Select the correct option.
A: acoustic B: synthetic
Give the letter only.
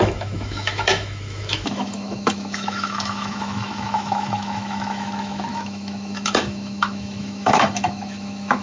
B